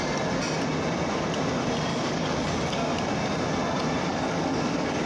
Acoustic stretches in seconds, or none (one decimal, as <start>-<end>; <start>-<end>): 0.0-1.9; 2.5-4.1